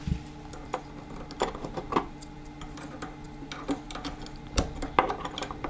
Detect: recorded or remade recorded